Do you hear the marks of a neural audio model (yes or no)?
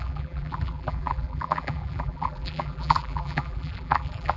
yes